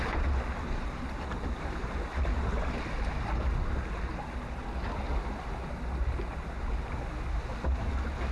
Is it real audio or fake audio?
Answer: real